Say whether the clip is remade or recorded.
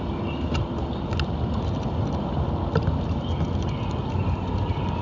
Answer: recorded